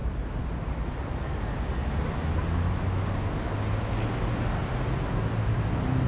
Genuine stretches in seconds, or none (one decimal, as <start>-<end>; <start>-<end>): 1.1-6.1